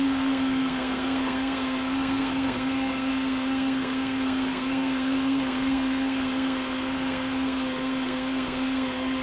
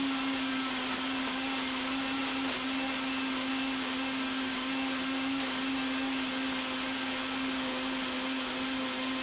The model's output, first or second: first